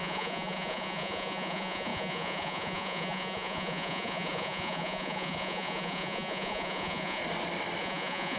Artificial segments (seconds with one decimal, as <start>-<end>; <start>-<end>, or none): 0.0-7.2; 7.8-8.4